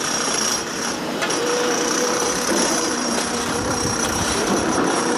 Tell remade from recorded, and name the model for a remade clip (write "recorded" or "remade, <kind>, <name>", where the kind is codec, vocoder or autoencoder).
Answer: remade, vocoder, BigVGAN v2